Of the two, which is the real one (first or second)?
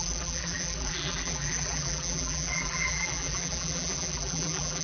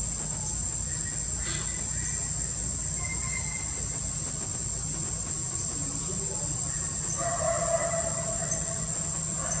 second